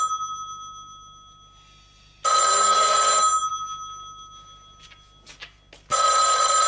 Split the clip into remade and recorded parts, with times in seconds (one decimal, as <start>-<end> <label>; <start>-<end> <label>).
0.0-6.7 recorded